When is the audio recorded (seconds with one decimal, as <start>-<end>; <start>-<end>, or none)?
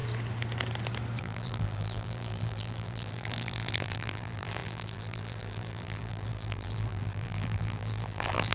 0.0-1.2